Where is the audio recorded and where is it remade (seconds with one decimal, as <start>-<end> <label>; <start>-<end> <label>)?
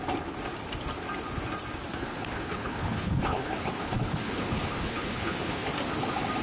0.0-1.9 recorded; 1.9-5.7 remade; 5.7-6.4 recorded